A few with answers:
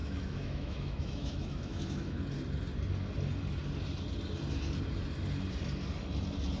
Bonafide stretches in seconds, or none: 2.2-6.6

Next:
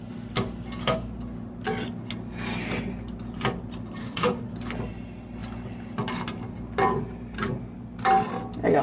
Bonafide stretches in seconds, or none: 0.0-4.0; 4.5-8.8

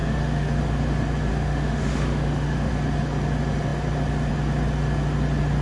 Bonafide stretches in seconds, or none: 0.6-1.3; 2.7-5.6

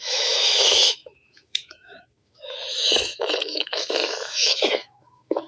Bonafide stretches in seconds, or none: none